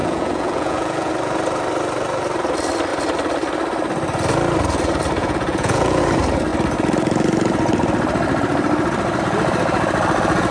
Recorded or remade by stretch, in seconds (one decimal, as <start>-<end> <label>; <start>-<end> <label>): 0.0-1.1 remade; 1.1-5.2 recorded; 5.2-6.0 remade; 6.0-10.5 recorded